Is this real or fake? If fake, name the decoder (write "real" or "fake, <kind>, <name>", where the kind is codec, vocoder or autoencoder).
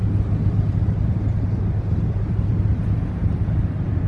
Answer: fake, vocoder, BigVGAN v2